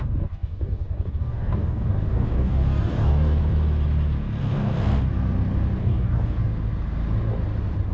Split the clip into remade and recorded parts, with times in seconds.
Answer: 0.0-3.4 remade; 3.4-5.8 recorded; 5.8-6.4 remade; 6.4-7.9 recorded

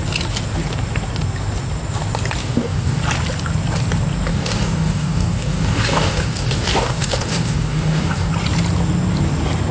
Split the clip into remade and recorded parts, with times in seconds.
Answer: 0.0-2.4 recorded; 2.4-3.0 remade; 3.0-4.3 recorded; 4.3-8.3 remade; 8.3-9.7 recorded